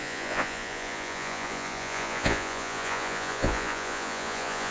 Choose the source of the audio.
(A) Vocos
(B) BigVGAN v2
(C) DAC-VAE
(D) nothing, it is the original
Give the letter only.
A